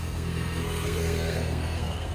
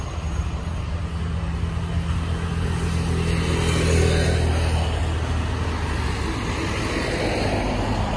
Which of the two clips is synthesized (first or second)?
first